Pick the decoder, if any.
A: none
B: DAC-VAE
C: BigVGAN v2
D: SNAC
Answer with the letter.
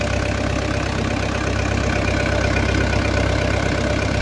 A